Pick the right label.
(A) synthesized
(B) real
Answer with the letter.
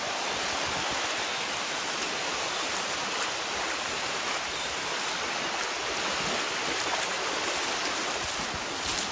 B